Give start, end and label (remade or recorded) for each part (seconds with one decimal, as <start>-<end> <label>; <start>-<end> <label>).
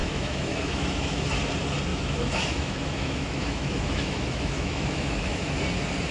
0.0-1.3 remade; 1.3-1.9 recorded; 1.9-5.6 remade; 5.6-6.1 recorded